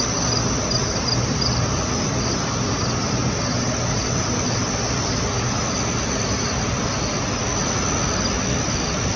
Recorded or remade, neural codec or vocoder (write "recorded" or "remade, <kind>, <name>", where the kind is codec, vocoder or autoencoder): recorded